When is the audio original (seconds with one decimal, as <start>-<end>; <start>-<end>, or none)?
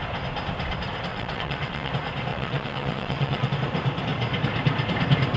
0.0-1.1; 1.9-2.3; 3.5-5.4